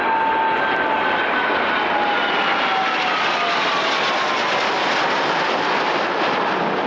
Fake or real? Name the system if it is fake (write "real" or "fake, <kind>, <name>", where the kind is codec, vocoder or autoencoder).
real